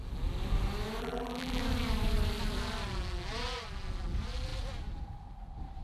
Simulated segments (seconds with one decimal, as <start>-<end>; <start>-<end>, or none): 1.0-1.6